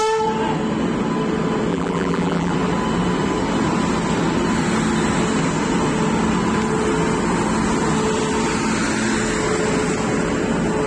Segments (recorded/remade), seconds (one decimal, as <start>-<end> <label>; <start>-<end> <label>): 0.0-1.7 recorded; 1.7-2.5 remade; 2.5-10.9 recorded